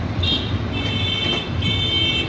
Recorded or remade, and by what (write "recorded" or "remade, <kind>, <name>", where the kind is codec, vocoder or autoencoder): recorded